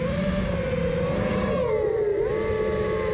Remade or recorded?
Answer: recorded